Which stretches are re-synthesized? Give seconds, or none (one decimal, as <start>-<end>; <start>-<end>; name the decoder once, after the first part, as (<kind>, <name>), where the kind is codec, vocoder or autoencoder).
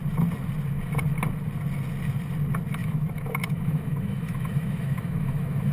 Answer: 2.8-5.7 (autoencoder, DAC-VAE)